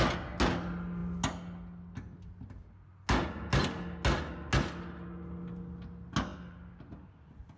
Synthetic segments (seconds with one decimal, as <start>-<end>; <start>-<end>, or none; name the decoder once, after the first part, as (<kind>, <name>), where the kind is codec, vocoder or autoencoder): none